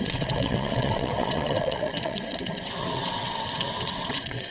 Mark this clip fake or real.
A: fake